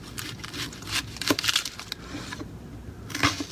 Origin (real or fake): real